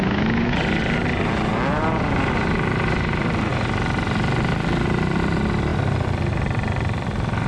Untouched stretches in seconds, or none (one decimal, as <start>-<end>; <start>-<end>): 0.0-1.5; 2.3-7.5